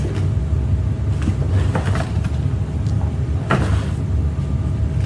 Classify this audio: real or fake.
real